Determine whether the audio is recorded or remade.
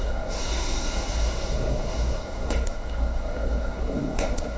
remade